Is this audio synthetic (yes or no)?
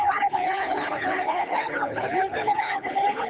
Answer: yes